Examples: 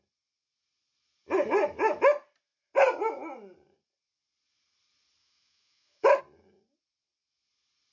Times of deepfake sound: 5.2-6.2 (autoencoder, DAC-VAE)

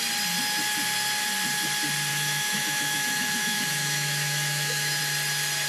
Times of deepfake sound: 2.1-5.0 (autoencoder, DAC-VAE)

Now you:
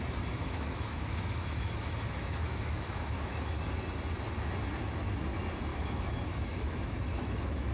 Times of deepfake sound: 0.4-3.7 (autoencoder, DAC-VAE); 5.7-7.7